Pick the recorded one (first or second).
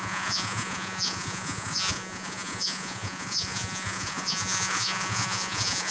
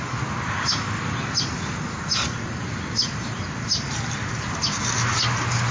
second